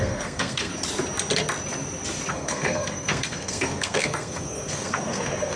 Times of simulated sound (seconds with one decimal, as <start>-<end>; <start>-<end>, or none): 0.0-0.7; 2.3-5.6